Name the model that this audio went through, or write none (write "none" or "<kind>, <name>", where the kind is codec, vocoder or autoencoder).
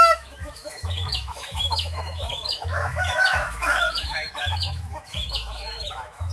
autoencoder, DAC-VAE